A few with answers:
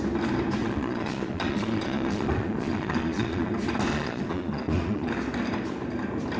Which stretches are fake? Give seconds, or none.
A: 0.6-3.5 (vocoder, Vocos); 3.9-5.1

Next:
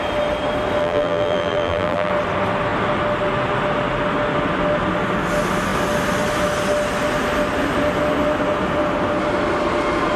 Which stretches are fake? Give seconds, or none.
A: 0.8-2.1 (vocoder, BigVGAN v2)

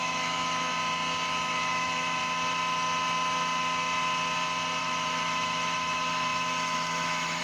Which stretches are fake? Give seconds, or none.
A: 0.0-0.7 (autoencoder, DAC-VAE); 1.3-2.2; 4.8-7.4

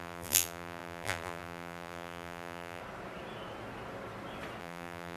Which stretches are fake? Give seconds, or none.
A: 0.0-2.8 (vocoder, BigVGAN v2); 4.6-5.2